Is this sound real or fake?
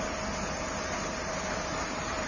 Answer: real